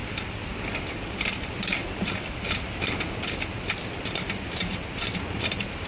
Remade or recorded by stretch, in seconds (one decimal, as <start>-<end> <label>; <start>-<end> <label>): 0.0-0.9 recorded; 0.9-1.8 remade; 1.8-4.0 recorded; 4.0-5.9 remade